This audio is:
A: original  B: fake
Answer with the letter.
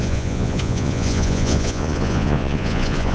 B